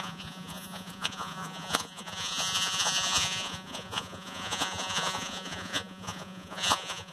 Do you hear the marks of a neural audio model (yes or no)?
yes